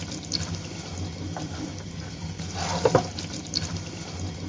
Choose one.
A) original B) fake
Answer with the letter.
A